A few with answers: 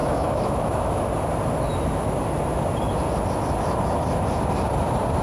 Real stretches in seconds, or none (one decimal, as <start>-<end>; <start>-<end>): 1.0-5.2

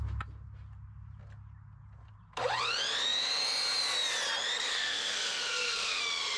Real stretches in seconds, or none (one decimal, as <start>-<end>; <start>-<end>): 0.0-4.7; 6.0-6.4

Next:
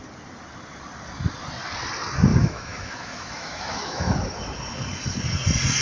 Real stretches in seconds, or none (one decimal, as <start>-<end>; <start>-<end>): 0.0-2.3; 4.2-5.8